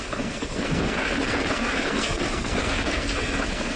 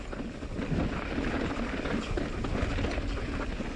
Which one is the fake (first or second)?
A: first